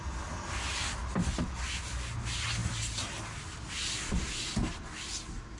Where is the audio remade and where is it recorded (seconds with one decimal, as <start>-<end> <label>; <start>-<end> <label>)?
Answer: 0.0-5.6 recorded